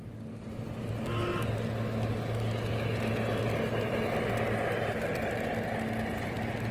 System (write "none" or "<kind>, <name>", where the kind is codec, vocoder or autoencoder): none